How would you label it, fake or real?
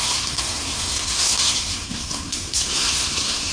fake